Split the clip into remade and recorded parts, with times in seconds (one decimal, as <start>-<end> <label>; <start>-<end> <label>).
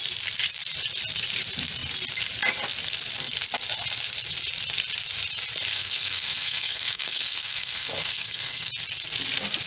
0.0-5.7 recorded; 5.7-8.7 remade; 8.7-9.7 recorded